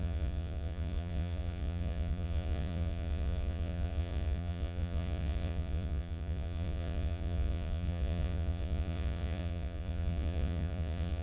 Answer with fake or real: fake